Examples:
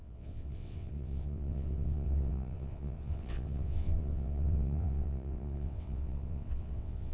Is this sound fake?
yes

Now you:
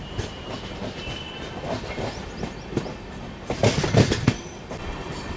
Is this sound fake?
yes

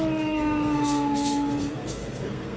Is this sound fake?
yes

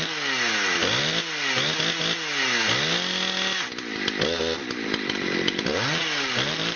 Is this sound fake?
no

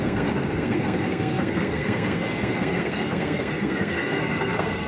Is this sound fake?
yes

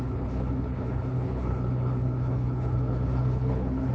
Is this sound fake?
yes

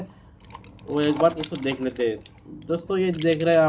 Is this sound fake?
no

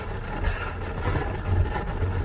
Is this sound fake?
no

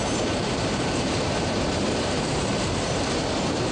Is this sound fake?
yes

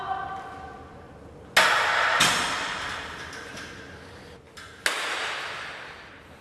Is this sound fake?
no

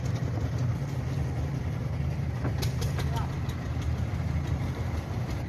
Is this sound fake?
no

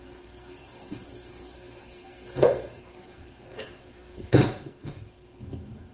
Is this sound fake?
yes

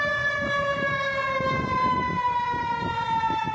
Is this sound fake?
no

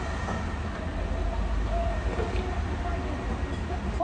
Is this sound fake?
no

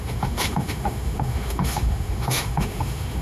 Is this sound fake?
yes